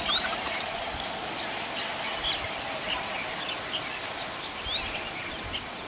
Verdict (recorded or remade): recorded